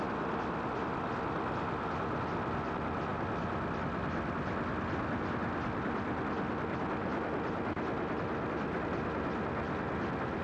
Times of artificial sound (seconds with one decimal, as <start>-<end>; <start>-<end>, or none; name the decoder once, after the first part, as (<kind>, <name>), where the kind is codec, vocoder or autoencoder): none